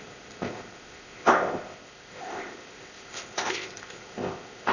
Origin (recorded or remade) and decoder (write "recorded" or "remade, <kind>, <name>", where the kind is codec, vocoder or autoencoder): remade, codec, ZipCodec